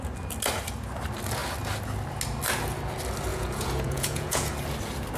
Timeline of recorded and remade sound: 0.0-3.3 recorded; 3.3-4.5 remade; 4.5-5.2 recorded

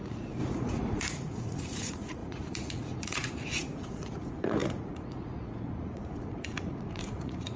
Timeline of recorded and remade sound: 0.0-7.6 remade